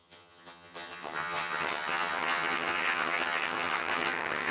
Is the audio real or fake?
fake